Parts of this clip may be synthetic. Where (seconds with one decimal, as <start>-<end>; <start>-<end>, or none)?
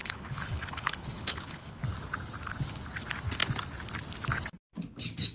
0.0-1.8